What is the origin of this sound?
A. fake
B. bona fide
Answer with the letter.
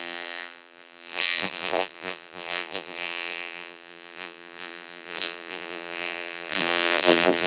A